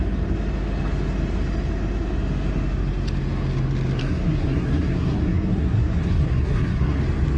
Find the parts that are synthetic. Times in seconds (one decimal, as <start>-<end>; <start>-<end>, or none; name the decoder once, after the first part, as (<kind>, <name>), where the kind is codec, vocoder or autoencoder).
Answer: 4.0-7.0 (codec, SNAC)